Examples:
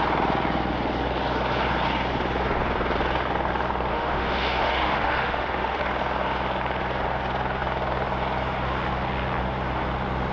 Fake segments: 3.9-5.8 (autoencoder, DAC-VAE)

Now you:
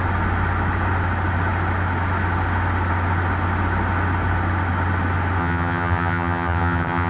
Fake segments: 5.4-7.1 (vocoder, HiFi-GAN)

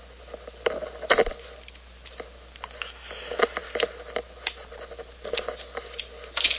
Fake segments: none